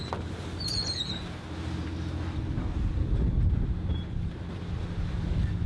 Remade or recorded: recorded